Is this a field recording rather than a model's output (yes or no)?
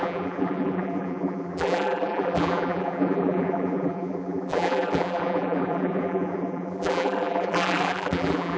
no